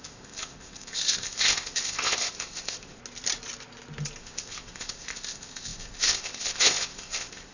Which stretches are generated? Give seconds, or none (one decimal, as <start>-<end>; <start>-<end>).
0.0-3.0; 4.2-7.5